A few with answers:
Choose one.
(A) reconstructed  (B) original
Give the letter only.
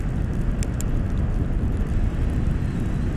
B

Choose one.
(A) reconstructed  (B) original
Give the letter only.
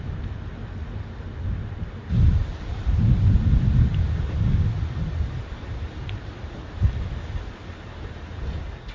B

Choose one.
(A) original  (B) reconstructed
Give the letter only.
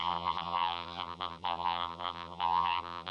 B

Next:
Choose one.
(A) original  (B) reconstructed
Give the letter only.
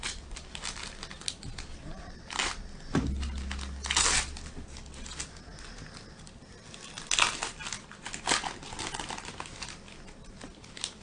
A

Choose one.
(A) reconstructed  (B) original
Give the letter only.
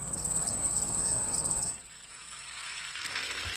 A